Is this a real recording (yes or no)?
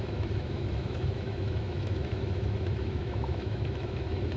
no